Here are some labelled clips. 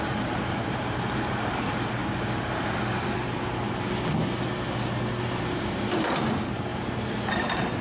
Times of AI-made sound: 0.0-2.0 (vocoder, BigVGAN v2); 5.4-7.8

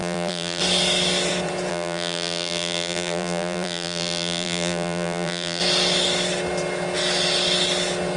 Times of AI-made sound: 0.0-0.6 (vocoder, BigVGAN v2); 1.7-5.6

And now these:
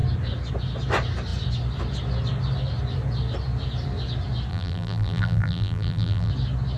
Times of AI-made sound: 4.5-6.3 (vocoder, BigVGAN v2)

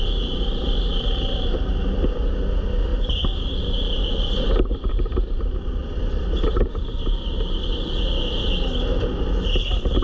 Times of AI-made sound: none